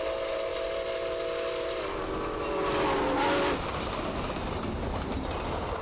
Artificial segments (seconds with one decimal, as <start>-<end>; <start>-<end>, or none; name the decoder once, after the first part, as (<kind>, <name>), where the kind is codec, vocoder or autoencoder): none